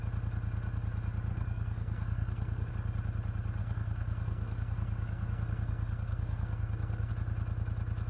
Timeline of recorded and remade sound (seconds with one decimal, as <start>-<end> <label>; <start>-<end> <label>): 0.0-1.3 recorded; 1.3-2.7 remade; 2.7-3.6 recorded; 3.6-7.1 remade; 7.1-8.1 recorded